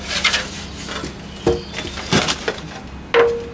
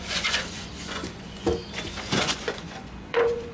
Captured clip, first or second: first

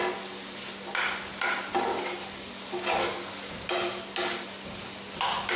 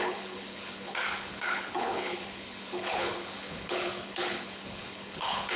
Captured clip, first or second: first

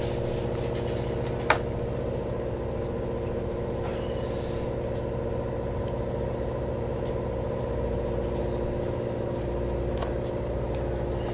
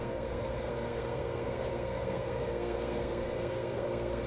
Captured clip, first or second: first